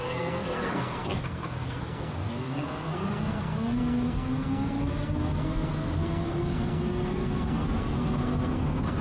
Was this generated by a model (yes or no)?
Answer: yes